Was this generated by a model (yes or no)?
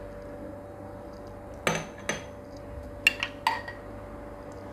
no